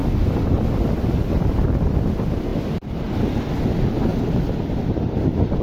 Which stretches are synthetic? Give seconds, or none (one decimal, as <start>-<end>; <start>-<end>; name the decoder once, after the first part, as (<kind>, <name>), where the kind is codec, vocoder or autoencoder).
none